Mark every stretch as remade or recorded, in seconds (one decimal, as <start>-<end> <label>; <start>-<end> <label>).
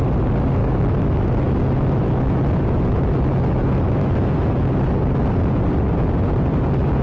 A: 0.0-0.6 recorded; 0.6-4.8 remade; 4.8-7.0 recorded